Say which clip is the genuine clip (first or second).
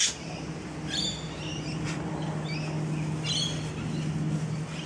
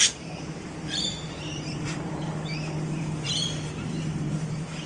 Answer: first